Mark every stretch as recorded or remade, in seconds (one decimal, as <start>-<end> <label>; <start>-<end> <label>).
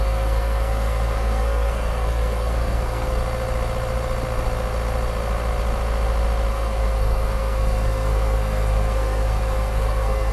0.0-3.2 remade; 3.2-6.5 recorded; 6.5-10.3 remade